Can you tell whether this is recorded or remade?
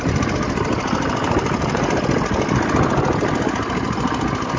recorded